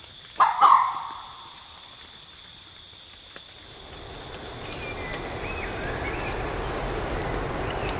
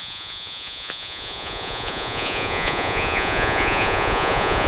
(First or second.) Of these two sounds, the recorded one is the first